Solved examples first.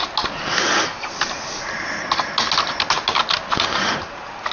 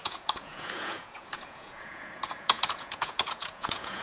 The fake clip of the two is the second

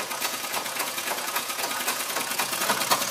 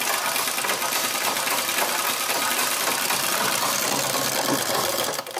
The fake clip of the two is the first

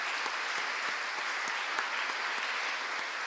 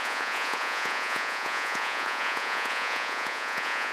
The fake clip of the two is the second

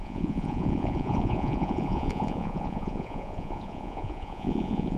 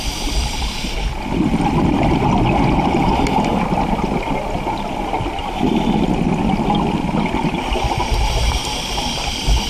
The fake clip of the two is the first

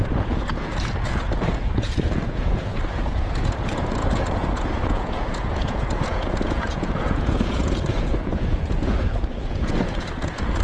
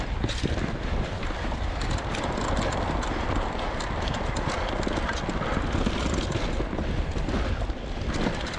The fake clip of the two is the first